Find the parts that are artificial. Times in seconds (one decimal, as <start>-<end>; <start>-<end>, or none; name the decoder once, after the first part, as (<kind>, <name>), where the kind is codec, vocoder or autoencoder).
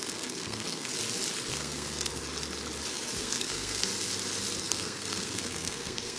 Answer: 0.0-0.9 (codec, SNAC); 1.5-2.1; 2.9-3.9; 4.6-6.2